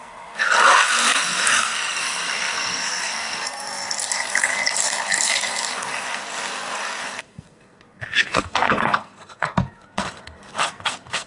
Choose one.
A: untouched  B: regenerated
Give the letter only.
B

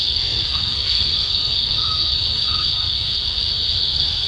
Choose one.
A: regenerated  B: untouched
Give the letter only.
A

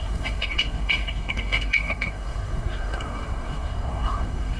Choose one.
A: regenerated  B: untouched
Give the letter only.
A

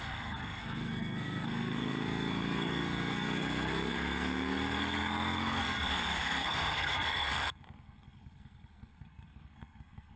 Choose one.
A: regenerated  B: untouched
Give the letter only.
A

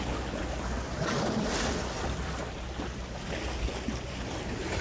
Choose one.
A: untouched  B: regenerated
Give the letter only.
A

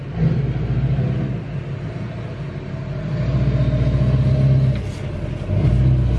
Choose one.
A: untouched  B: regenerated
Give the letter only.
A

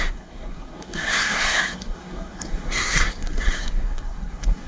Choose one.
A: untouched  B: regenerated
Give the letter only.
B